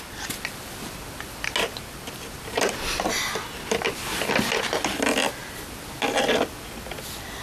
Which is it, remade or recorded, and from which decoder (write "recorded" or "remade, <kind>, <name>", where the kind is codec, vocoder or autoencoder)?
recorded